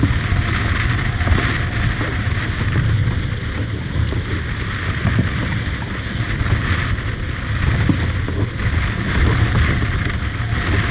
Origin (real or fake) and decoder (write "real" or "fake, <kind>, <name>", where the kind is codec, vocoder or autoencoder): real